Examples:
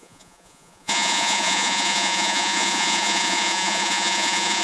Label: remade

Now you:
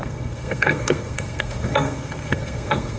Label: remade